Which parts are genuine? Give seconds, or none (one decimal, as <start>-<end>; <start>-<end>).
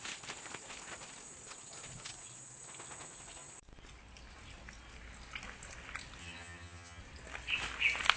0.0-6.2; 7.0-8.2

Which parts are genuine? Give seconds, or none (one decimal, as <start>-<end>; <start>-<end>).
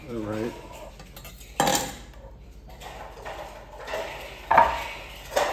0.9-5.5